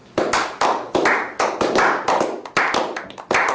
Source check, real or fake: real